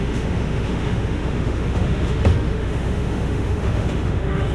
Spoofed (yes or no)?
yes